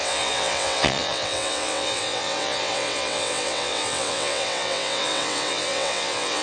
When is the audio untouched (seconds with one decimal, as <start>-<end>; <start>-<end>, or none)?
none